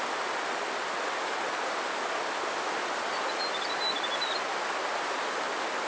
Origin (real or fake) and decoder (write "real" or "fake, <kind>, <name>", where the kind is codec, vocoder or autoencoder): real